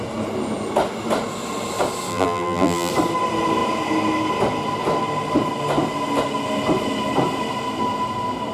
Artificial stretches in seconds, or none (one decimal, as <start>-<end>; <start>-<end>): 2.1-2.9

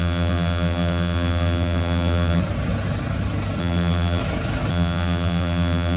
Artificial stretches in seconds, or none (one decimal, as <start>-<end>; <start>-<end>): 0.0-2.4; 3.6-4.2; 4.7-6.0

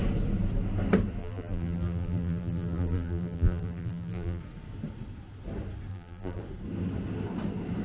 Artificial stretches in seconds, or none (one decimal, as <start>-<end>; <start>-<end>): 1.2-4.4; 5.9-6.4

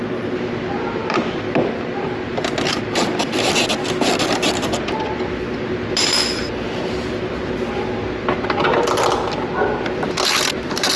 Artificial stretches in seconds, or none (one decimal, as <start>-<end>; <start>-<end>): none

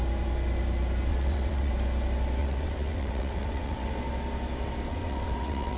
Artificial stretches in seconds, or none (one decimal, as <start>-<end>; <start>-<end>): 1.1-1.7; 2.4-3.9; 4.9-5.8

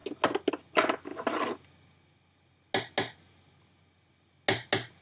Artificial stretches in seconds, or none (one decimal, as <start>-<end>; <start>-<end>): none

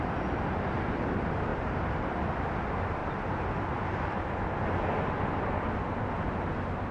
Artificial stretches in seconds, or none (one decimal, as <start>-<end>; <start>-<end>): none